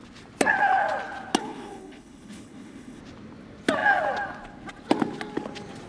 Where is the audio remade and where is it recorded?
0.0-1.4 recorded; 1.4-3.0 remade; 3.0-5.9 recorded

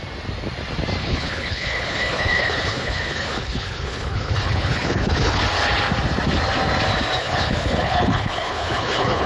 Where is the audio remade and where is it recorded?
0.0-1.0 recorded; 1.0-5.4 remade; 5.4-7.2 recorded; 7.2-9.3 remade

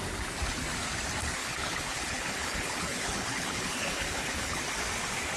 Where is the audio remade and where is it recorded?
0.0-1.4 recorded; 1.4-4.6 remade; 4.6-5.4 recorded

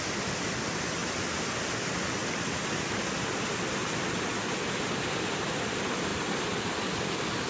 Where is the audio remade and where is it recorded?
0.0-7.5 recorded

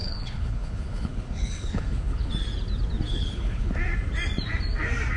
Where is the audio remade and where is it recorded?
0.0-2.3 remade; 2.3-3.1 recorded; 3.1-3.7 remade; 3.7-5.2 recorded

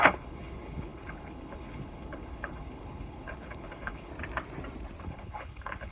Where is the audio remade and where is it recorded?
0.0-4.1 remade; 4.1-5.0 recorded; 5.0-5.9 remade

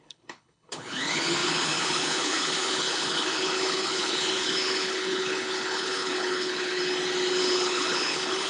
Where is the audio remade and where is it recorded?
0.0-6.8 remade; 6.8-7.4 recorded; 7.4-8.5 remade

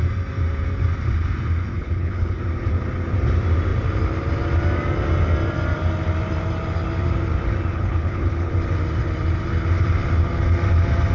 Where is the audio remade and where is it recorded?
0.0-1.7 recorded; 1.7-2.4 remade; 2.4-7.7 recorded; 7.7-8.5 remade; 8.5-11.1 recorded